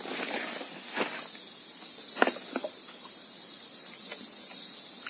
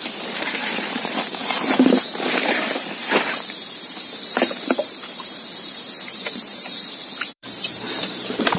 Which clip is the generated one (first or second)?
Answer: second